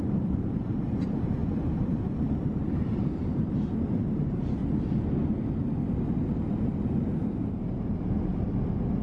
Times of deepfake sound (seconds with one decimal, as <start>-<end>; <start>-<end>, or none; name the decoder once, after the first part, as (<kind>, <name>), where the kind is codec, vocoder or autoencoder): 0.0-4.6 (vocoder, BigVGAN v2); 7.5-8.3